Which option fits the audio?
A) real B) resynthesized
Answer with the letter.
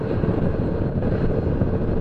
A